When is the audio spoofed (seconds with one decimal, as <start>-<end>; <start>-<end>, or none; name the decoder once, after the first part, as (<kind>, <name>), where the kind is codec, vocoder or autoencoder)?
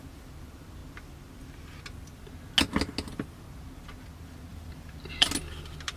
4.5-5.3 (vocoder, BigVGAN v2)